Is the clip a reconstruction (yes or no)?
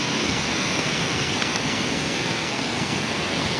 yes